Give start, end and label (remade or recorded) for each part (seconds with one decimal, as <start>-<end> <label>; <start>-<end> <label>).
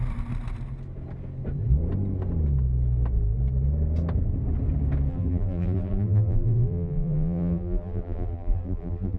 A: 0.0-5.1 recorded; 5.1-9.2 remade